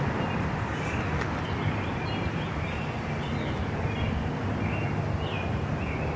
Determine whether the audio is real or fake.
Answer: real